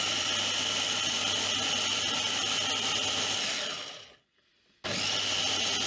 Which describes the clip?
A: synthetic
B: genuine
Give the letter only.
B